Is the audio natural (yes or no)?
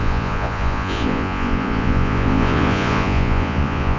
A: no